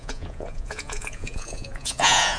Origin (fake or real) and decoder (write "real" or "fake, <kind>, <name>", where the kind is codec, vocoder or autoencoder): fake, vocoder, Vocos